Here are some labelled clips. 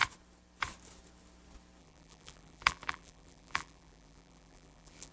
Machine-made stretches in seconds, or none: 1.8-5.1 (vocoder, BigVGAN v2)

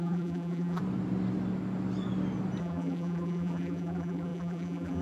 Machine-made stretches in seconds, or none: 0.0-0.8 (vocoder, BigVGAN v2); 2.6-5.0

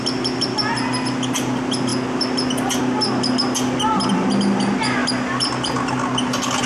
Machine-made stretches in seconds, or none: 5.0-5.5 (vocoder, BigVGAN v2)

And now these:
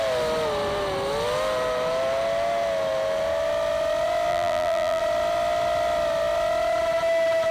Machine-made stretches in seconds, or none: 4.3-5.0 (vocoder, BigVGAN v2)

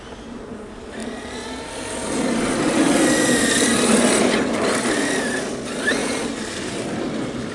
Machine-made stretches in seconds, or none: 6.0-7.0 (vocoder, BigVGAN v2)